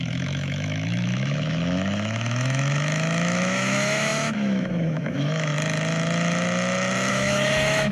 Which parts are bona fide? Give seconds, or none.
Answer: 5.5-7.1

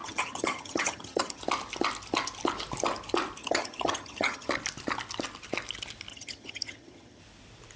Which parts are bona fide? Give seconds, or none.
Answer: 1.4-3.4; 4.5-6.1; 7.2-7.8

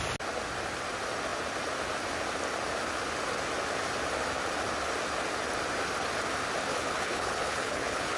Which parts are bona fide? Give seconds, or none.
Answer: 0.0-6.7

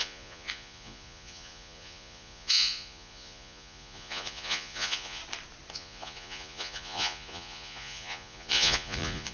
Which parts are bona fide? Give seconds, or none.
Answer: 5.2-5.7

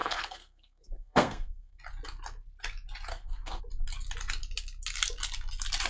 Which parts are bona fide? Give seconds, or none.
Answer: 1.8-3.1; 3.6-5.9

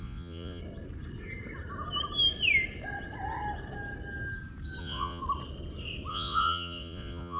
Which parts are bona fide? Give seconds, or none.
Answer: 0.6-4.8; 5.2-6.1

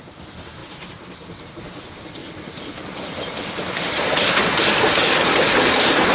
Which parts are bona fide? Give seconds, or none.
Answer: 0.0-2.2; 4.8-6.1